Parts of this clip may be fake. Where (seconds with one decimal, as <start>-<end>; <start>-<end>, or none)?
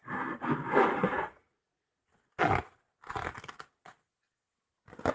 none